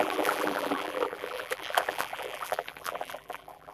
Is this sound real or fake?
fake